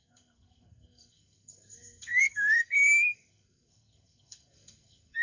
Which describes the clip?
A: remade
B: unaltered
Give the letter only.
A